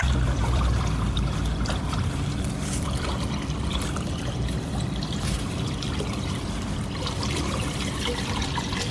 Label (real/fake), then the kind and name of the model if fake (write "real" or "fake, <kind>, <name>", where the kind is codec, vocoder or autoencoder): fake, vocoder, BigVGAN v2